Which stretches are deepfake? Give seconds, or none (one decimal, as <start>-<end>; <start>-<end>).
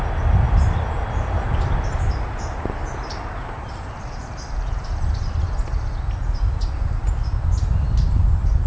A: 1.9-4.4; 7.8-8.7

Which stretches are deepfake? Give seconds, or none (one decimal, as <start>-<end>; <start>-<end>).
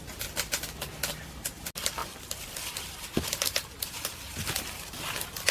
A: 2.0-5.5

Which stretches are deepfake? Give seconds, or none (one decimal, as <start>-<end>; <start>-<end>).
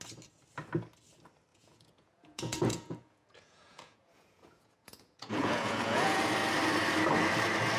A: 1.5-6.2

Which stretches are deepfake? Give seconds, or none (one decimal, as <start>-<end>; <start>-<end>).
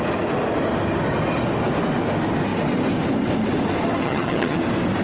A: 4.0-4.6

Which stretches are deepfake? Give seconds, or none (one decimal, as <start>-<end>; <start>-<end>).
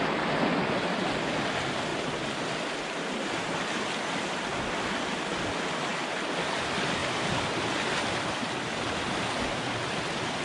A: 1.9-3.0; 5.9-6.6; 7.0-8.8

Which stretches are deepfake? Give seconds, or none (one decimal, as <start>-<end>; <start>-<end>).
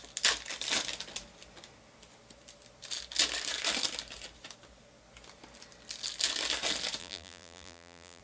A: 7.0-8.2